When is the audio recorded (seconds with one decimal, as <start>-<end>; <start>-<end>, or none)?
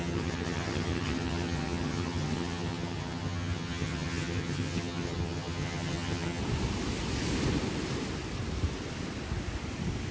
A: 6.4-10.1